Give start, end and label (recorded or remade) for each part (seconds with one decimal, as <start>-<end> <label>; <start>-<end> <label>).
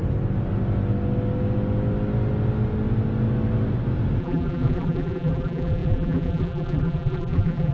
0.0-4.2 recorded; 4.2-7.7 remade